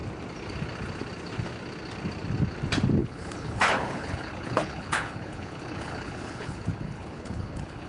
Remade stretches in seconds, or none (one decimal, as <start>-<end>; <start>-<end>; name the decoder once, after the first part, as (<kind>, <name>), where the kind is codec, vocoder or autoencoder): 3.0-7.9 (codec, HILCodec)